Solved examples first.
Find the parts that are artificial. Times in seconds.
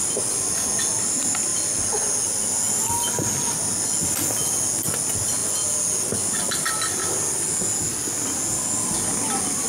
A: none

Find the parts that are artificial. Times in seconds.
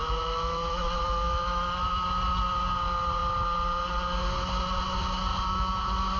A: 0.0-1.9 (autoencoder, DAC-VAE); 5.3-5.8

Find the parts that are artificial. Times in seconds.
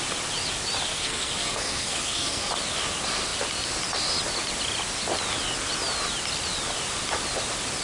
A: 0.9-2.5 (codec, SNAC)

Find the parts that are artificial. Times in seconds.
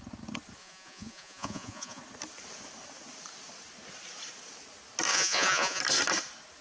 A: 0.6-2.0 (vocoder, Vocos); 5.1-5.8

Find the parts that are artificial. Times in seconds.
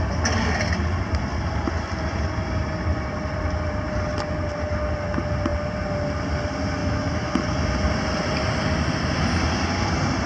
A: 6.8-7.3 (autoencoder, DAC-VAE)